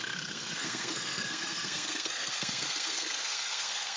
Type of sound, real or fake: fake